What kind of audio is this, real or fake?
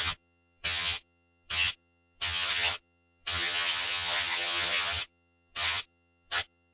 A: fake